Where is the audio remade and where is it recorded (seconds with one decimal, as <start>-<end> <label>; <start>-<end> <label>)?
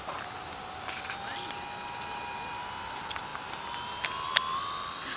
0.0-1.3 remade; 1.3-2.6 recorded; 2.6-5.2 remade